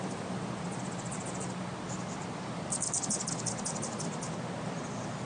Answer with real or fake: fake